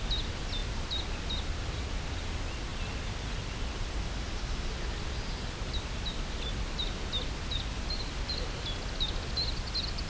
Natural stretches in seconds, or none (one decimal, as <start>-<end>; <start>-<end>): 0.0-10.1